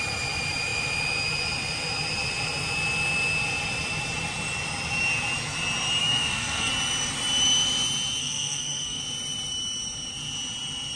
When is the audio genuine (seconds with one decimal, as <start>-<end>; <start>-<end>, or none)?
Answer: 0.0-6.0; 6.7-8.2; 9.0-11.0